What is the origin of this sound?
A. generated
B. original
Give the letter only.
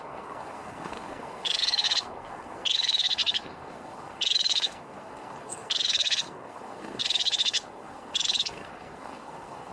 A